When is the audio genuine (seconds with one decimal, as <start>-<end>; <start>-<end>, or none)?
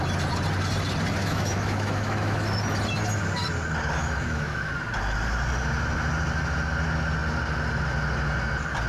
0.0-1.2; 2.6-4.0; 4.7-8.9